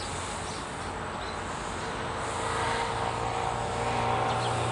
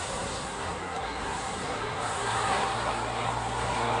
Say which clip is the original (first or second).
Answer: first